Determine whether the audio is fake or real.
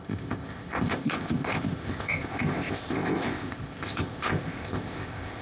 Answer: fake